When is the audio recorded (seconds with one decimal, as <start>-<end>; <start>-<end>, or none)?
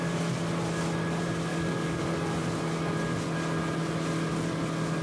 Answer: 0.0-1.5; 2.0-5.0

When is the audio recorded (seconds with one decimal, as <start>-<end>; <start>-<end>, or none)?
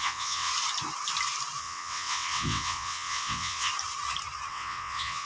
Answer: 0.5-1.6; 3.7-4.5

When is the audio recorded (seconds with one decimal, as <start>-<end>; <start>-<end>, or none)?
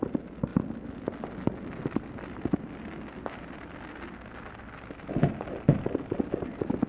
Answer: 0.0-6.9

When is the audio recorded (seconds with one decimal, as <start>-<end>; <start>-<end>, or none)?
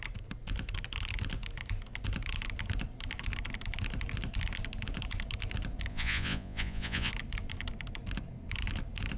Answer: 0.0-5.9; 7.1-9.2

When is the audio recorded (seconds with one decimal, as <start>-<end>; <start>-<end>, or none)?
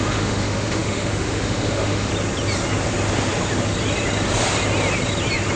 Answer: 2.1-5.6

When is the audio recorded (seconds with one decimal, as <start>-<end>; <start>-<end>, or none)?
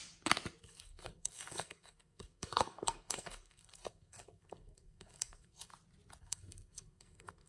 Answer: 0.0-0.6; 5.7-6.2